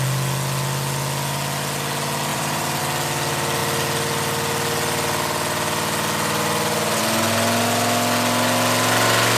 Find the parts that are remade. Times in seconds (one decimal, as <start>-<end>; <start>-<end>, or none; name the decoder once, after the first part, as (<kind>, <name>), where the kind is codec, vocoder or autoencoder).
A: 2.3-2.8 (vocoder, BigVGAN v2)

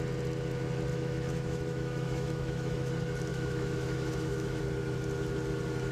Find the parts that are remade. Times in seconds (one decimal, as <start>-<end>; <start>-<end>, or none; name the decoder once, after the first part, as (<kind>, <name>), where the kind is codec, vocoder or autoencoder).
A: 0.9-2.9 (autoencoder, DAC-VAE); 3.3-4.6

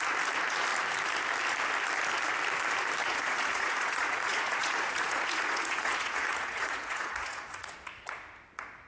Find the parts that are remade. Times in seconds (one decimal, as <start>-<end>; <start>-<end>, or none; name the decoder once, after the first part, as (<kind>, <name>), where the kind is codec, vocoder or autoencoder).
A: 3.0-7.8 (vocoder, Vocos)